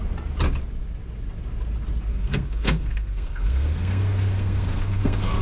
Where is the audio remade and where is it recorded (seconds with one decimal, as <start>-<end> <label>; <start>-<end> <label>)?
0.0-2.1 recorded; 2.1-5.4 remade